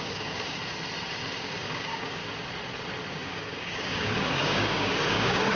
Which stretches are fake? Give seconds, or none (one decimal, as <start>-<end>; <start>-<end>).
0.0-0.6; 1.4-2.2; 3.1-5.6